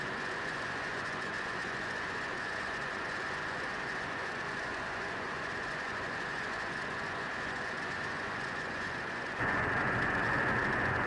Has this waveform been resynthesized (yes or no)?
yes